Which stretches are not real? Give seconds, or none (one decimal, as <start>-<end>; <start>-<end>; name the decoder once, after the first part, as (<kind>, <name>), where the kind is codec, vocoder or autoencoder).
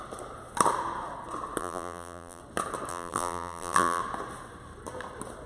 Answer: 1.6-2.4 (vocoder, BigVGAN v2); 2.9-4.0